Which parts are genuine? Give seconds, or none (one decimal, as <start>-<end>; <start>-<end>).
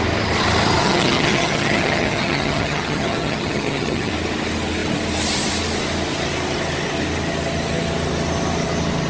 0.0-0.8; 4.1-9.1